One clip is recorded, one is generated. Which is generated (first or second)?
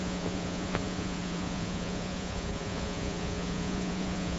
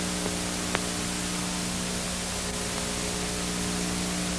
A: first